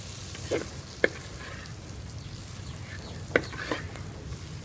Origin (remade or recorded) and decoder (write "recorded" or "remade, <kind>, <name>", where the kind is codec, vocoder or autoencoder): recorded